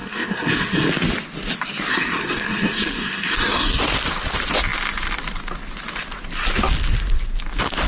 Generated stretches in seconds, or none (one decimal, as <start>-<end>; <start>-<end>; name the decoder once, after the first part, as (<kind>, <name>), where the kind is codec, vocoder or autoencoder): 0.0-0.9 (codec, SNAC); 1.9-3.8